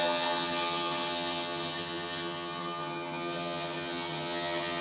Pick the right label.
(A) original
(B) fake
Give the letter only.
B